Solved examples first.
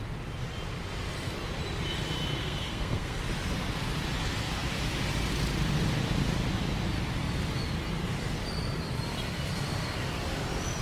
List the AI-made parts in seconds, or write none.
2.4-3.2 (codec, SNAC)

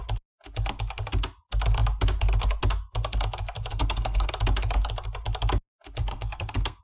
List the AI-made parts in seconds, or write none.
3.7-4.3 (codec, SNAC); 6.0-6.8

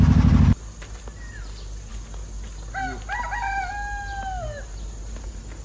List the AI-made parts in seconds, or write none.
none

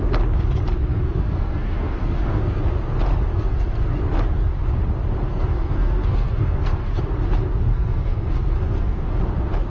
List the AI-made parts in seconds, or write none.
0.9-2.6 (codec, SNAC); 3.3-4.0; 5.3-7.0; 7.7-9.2

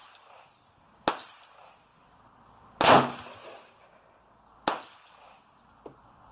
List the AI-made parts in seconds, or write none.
none